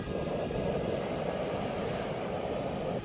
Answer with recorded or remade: recorded